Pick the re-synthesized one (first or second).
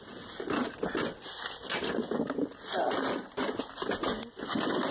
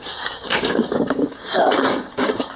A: second